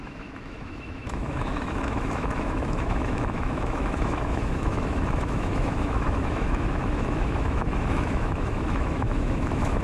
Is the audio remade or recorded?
remade